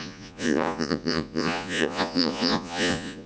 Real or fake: fake